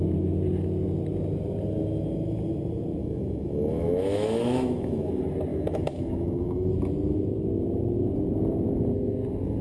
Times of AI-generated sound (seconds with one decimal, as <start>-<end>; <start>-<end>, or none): 3.0-5.1; 5.5-6.7